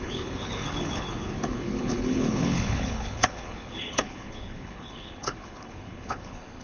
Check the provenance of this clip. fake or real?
fake